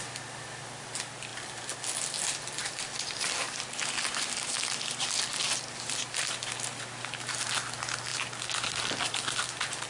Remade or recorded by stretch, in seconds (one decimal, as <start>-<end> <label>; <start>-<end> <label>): 0.0-9.9 recorded

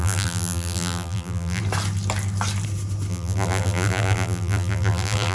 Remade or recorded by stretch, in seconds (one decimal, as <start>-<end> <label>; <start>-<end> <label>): 0.0-1.6 remade; 1.6-3.1 recorded; 3.1-5.3 remade

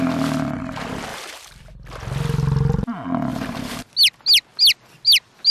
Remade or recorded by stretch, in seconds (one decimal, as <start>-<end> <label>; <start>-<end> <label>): 0.0-1.1 recorded; 1.1-1.7 remade; 1.7-3.3 recorded; 3.3-3.9 remade; 3.9-5.5 recorded

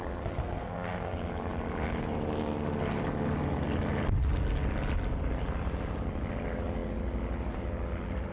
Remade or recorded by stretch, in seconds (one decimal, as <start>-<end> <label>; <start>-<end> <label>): 0.0-0.4 recorded; 0.4-1.1 remade; 1.1-8.3 recorded

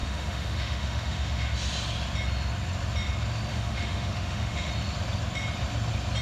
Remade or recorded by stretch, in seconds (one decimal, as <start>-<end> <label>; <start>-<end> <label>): 0.0-1.5 remade; 1.5-3.5 recorded; 3.5-4.7 remade; 4.7-6.2 recorded

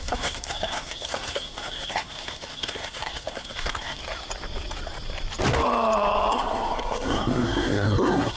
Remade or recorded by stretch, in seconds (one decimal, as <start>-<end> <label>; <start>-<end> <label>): 0.0-4.0 remade; 4.0-6.3 recorded; 6.3-8.4 remade

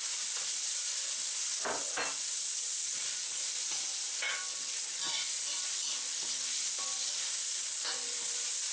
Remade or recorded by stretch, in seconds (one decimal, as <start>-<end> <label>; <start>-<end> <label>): 0.0-8.7 recorded

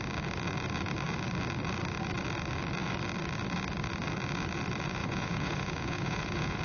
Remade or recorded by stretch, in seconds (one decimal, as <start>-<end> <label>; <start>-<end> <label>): 0.0-5.0 recorded; 5.0-6.6 remade